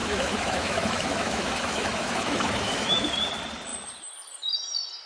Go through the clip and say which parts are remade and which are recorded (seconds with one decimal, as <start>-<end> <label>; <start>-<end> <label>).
0.0-3.1 remade; 3.1-5.1 recorded